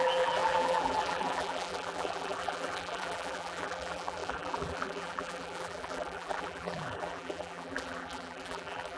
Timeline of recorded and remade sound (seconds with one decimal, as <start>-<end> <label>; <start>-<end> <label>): 0.0-9.0 remade